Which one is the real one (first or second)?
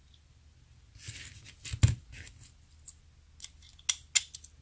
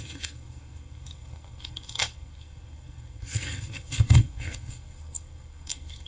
first